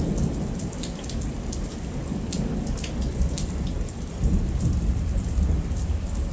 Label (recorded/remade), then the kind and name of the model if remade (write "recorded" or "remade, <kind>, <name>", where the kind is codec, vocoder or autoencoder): recorded